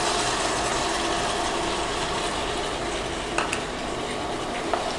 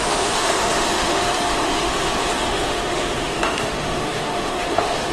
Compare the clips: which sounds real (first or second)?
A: first